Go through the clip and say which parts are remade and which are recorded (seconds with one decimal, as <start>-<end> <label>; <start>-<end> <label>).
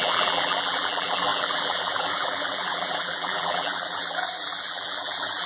0.0-5.5 remade